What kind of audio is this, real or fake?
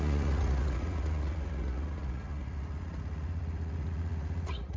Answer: fake